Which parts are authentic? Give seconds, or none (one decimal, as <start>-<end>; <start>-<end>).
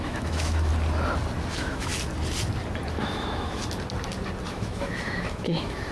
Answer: 0.7-1.5; 1.9-2.9; 3.6-4.5